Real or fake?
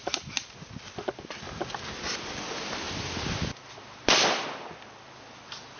real